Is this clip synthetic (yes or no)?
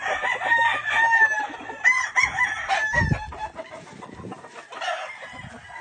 no